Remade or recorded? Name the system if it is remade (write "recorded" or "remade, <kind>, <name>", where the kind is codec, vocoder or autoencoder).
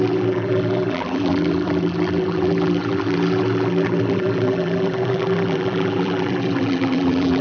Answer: remade, vocoder, BigVGAN v2